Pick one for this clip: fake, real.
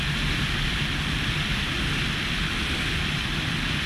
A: real